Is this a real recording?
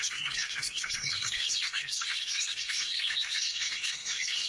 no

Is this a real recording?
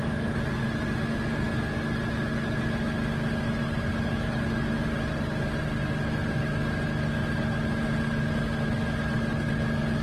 yes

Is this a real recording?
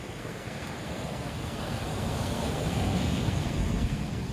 no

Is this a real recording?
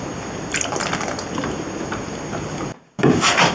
yes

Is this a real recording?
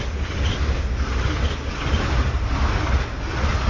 yes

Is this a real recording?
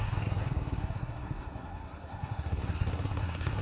no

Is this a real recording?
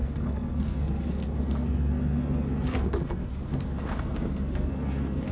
no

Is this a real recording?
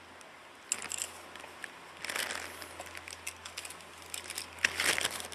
yes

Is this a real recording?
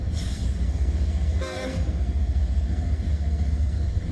no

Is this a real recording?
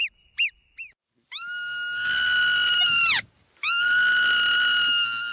yes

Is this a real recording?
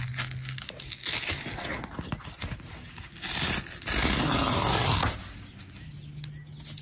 yes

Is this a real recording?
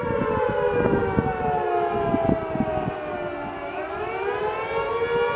yes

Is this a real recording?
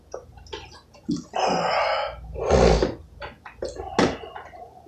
yes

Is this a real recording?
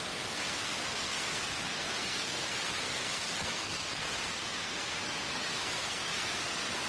no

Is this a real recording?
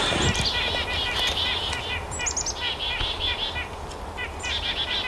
yes